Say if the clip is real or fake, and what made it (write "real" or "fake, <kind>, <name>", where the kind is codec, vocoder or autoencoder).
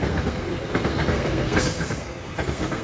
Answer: fake, codec, SNAC